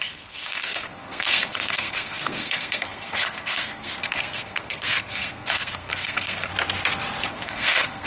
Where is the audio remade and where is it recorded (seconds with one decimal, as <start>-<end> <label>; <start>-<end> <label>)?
0.0-6.5 remade; 6.5-7.3 recorded; 7.3-8.1 remade